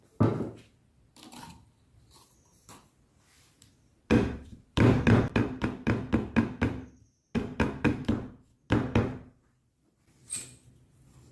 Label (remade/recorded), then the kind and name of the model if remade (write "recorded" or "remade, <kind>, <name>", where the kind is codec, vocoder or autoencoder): recorded